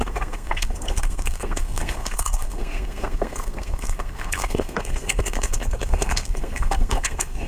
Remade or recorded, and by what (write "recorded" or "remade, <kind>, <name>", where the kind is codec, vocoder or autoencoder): remade, codec, SNAC